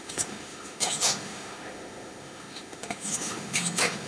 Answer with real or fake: fake